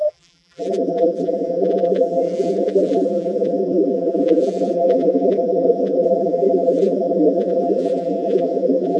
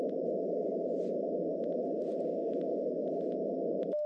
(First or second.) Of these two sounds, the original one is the second